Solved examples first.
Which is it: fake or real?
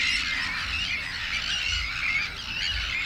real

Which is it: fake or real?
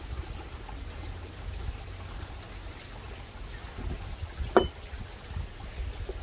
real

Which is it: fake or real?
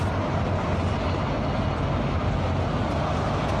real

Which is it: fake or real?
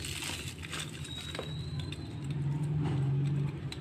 real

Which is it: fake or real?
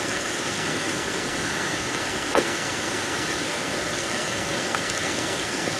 fake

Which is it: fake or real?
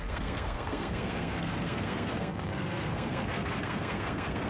fake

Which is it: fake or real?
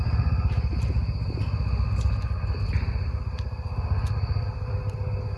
real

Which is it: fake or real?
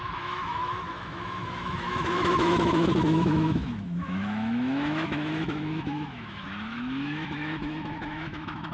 fake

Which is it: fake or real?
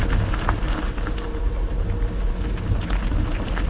real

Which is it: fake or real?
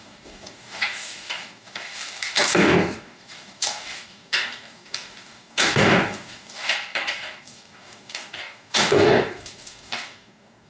fake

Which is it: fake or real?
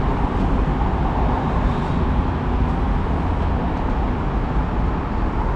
real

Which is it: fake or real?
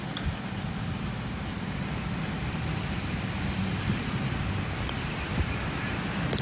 real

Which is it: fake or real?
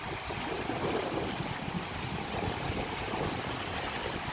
real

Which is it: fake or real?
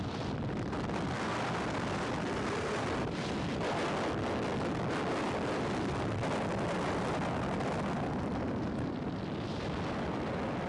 real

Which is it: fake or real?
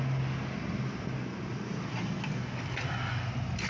real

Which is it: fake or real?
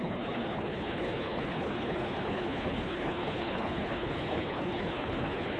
fake